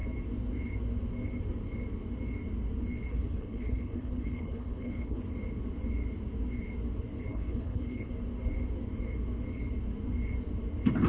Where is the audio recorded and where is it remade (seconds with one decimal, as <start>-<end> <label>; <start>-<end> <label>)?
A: 0.0-3.1 recorded; 3.1-5.2 remade; 5.2-7.3 recorded; 7.3-8.1 remade; 8.1-11.1 recorded